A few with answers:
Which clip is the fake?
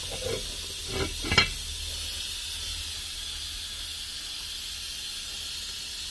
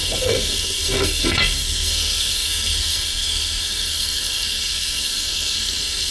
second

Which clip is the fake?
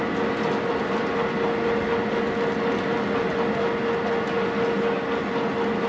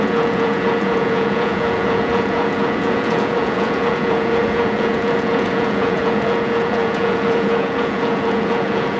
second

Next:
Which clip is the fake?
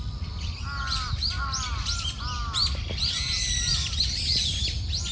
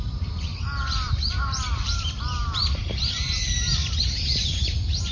second